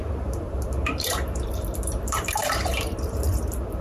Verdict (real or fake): fake